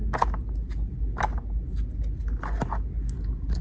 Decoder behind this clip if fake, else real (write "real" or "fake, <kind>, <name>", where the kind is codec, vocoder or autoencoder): real